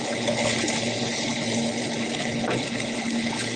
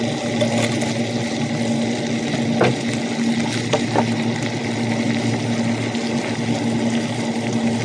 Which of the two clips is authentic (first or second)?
second